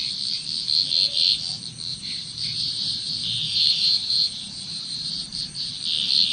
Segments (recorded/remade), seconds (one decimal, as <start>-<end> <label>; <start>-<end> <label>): 0.0-1.9 recorded; 1.9-5.7 remade; 5.7-6.3 recorded